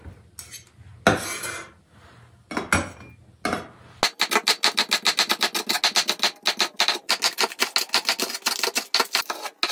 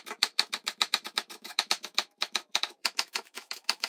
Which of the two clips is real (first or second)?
first